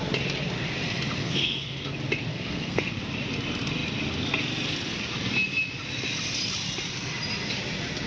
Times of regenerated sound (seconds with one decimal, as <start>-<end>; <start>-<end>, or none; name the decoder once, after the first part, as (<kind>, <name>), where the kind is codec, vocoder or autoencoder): 1.2-1.9 (codec, SNAC); 2.3-2.9